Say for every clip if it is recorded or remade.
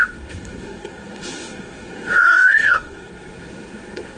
remade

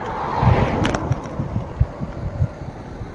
recorded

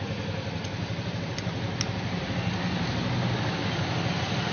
recorded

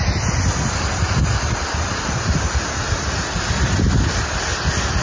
recorded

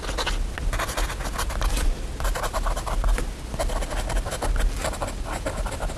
recorded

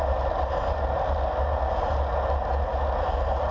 recorded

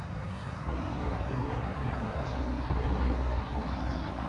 remade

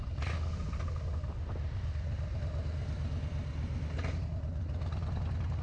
recorded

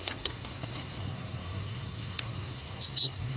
remade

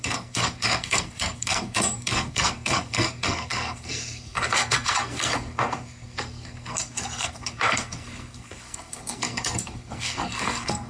remade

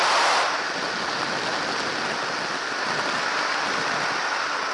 recorded